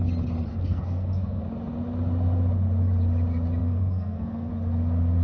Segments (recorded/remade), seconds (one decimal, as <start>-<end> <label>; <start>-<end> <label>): 0.0-0.5 recorded; 0.5-1.4 remade; 1.4-3.6 recorded; 3.6-4.5 remade; 4.5-5.2 recorded